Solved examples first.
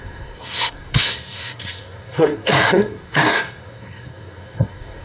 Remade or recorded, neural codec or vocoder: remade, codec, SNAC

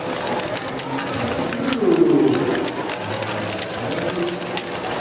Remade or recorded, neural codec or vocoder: recorded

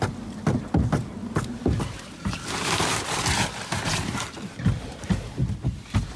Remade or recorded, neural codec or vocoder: recorded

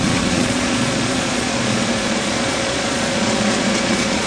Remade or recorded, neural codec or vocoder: remade, vocoder, Vocos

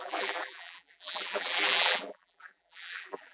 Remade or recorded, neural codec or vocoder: remade, vocoder, BigVGAN v2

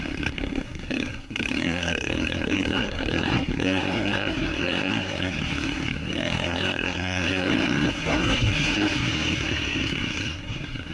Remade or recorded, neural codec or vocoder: remade, codec, SNAC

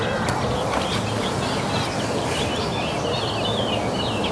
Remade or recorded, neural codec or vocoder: recorded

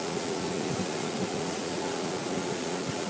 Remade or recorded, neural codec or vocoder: remade, vocoder, Vocos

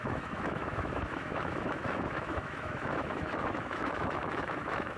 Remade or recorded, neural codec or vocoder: remade, autoencoder, DAC-VAE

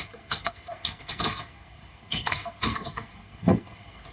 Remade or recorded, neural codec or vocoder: remade, codec, SNAC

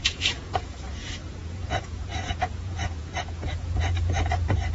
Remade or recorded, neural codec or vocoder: remade, vocoder, Vocos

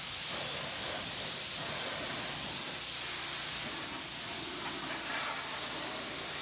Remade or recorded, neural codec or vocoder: recorded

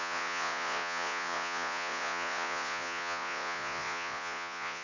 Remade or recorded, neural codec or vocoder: remade, vocoder, Vocos